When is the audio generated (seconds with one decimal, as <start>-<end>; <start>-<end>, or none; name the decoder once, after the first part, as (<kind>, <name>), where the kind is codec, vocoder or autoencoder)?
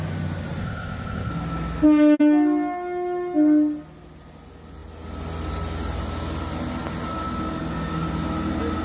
0.6-1.3 (codec, ZipCodec)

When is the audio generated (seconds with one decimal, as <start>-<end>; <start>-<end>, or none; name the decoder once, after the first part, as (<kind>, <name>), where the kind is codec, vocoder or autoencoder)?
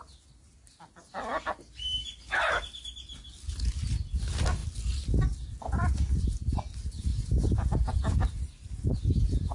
7.1-9.5 (vocoder, BigVGAN v2)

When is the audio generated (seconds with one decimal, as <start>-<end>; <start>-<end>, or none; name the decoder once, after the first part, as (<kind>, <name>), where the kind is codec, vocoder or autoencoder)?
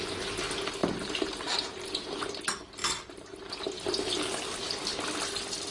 0.8-2.2 (vocoder, BigVGAN v2); 2.8-3.5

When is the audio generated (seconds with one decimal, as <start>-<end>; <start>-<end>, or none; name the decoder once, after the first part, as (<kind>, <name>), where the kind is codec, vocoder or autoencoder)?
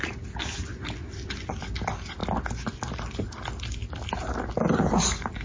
none